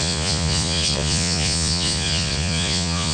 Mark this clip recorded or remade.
remade